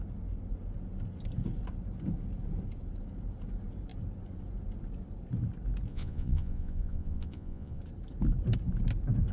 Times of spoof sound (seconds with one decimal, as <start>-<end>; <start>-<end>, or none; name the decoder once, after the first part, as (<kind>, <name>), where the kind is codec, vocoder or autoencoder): 5.9-7.8 (vocoder, Vocos)